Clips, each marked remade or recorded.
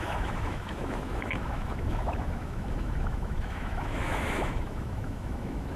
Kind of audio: remade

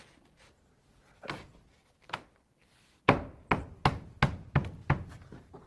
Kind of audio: recorded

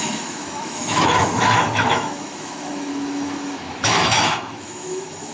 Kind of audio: remade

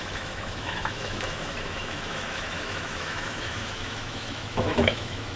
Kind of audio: remade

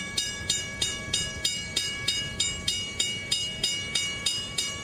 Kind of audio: remade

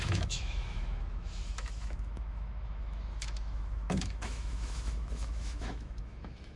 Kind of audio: remade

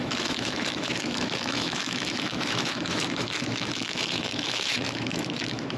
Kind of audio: remade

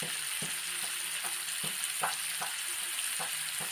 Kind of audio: recorded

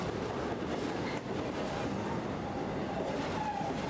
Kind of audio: recorded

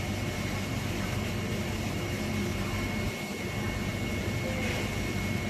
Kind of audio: recorded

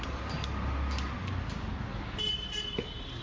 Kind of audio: recorded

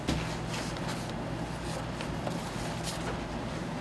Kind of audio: recorded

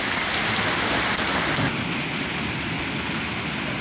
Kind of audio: recorded